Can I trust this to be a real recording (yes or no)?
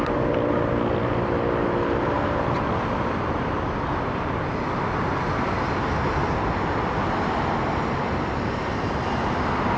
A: yes